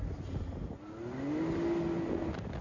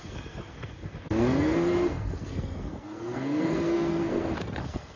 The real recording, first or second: first